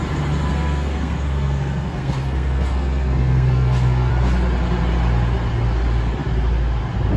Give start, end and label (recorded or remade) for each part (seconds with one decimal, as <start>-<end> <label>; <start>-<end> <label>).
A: 0.0-0.5 recorded; 0.5-4.1 remade; 4.1-7.2 recorded